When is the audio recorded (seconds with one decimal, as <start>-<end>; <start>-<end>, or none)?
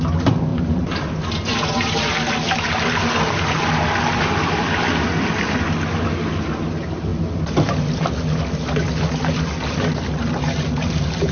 0.0-0.5; 3.6-11.3